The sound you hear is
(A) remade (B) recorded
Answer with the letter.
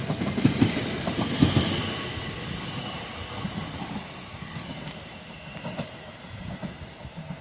B